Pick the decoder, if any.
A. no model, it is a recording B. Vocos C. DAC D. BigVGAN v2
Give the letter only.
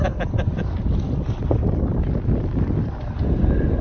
A